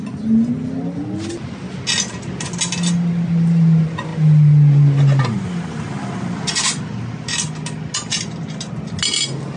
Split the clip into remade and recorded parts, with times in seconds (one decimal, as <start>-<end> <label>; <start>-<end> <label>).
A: 0.0-9.6 recorded